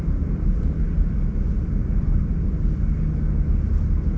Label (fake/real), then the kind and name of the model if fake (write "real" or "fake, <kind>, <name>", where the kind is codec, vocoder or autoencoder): real